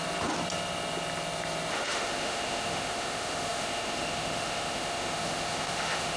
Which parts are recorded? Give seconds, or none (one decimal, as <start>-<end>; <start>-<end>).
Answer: 0.0-1.7